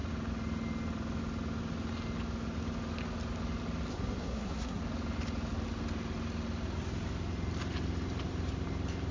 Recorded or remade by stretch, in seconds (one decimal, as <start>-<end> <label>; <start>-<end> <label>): 0.0-3.9 recorded; 3.9-4.8 remade; 4.8-9.1 recorded